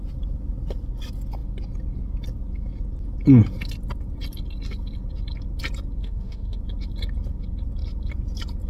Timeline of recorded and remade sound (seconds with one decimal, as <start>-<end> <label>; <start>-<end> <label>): 0.0-6.0 recorded; 6.0-6.6 remade; 6.6-8.7 recorded